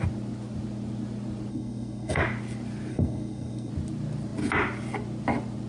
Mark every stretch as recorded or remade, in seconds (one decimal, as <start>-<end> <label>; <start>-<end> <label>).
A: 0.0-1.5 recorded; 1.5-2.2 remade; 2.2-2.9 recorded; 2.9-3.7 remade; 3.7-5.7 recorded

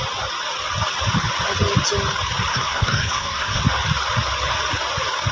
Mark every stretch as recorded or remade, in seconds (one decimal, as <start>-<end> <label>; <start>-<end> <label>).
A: 0.0-2.5 recorded; 2.5-3.6 remade; 3.6-5.3 recorded

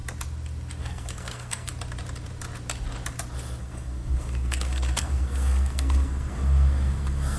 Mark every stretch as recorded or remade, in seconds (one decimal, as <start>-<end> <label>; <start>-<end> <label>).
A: 0.0-0.8 recorded; 0.8-1.7 remade; 1.7-3.6 recorded; 3.6-7.4 remade